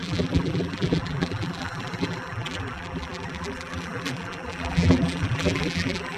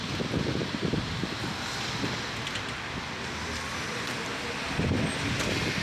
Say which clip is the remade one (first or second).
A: first